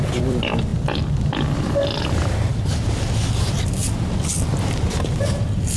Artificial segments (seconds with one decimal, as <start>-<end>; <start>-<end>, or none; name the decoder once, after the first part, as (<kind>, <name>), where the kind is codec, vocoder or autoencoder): 0.0-3.8 (vocoder, BigVGAN v2); 4.6-5.8